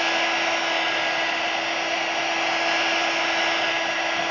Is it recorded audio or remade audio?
recorded